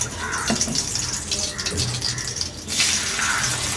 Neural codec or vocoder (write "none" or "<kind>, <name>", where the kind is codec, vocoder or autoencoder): none